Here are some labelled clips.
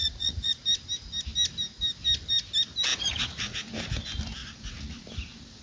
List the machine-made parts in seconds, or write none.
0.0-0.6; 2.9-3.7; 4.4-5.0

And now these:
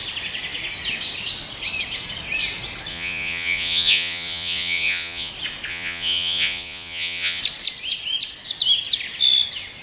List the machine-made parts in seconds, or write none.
2.9-5.3; 5.7-7.4

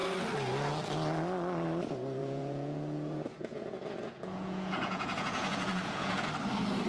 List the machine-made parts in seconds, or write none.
2.2-6.3

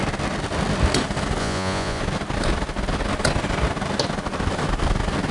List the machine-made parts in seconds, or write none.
1.4-2.0

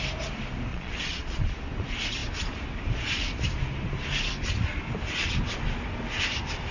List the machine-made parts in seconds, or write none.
0.7-1.5

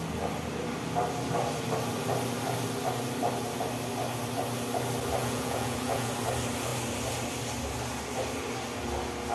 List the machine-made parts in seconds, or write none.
5.2-6.1

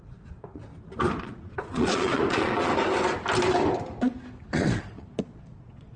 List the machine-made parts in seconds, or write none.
0.0-0.7; 1.2-2.7; 4.8-6.0

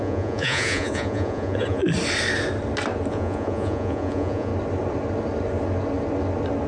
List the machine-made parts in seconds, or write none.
0.0-1.8; 3.1-4.5